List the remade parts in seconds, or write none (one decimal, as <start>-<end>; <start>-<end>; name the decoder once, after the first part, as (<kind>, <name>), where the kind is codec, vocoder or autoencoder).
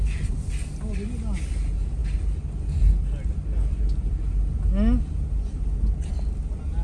none